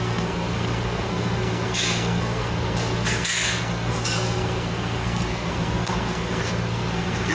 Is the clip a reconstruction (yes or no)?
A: yes